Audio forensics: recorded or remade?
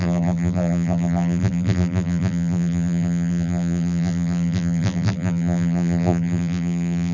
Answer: remade